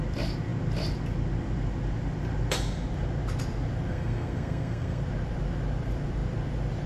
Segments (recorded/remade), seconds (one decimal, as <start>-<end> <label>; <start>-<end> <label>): 0.0-3.9 recorded; 3.9-5.0 remade; 5.0-6.9 recorded